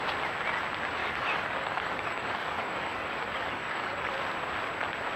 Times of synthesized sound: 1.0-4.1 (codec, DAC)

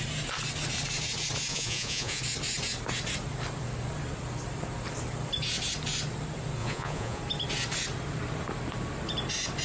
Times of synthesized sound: 1.5-2.2 (vocoder, Vocos); 6.6-7.2

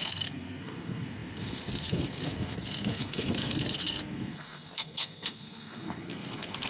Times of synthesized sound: 0.0-6.7 (codec, SNAC)

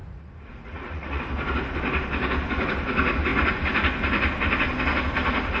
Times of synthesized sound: 0.0-1.2 (vocoder, Vocos)

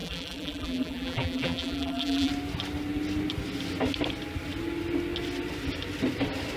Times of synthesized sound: 0.0-2.3 (vocoder, BigVGAN v2)